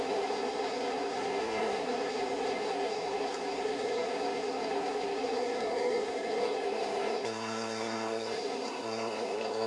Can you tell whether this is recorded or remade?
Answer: remade